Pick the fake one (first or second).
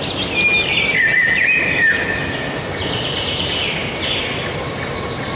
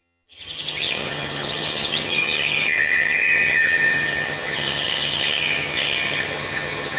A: second